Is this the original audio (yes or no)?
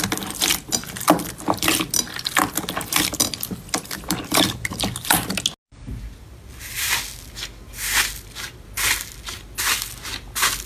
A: yes